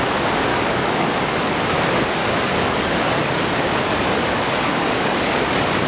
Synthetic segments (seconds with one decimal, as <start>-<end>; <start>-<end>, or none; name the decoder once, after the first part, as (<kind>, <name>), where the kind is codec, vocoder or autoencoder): 0.5-1.5 (codec, DAC); 2.2-5.9